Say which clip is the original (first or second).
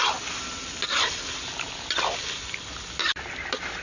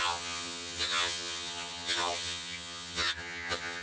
first